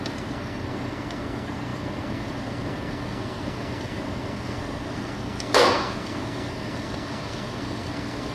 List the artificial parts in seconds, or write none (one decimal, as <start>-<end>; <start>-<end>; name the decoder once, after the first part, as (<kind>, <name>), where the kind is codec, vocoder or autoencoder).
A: 0.0-8.3 (codec, SNAC)